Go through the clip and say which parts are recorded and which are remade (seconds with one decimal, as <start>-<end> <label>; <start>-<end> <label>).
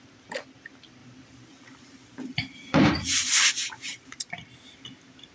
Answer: 0.0-1.0 recorded; 1.0-4.2 remade; 4.2-5.3 recorded